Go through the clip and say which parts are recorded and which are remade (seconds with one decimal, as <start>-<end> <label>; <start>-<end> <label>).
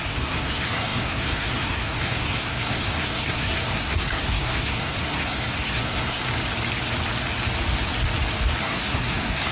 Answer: 0.0-6.2 remade; 6.2-8.6 recorded; 8.6-9.5 remade